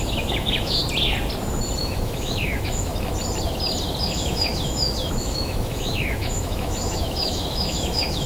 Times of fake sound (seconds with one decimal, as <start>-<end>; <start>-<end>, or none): 0.0-0.8; 1.8-2.9; 4.0-8.3